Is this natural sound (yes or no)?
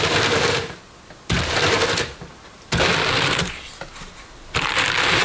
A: yes